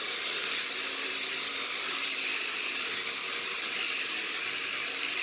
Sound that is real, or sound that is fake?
fake